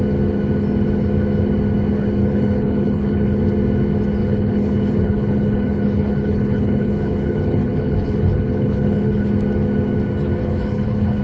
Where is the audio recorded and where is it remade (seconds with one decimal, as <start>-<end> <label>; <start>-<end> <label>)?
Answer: 0.0-2.2 recorded; 2.2-3.4 remade; 3.4-4.2 recorded; 4.2-9.3 remade; 9.3-10.4 recorded; 10.4-11.2 remade